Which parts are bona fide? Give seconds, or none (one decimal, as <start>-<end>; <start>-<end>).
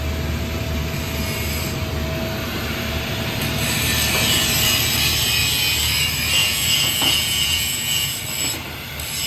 0.0-6.4; 8.2-9.3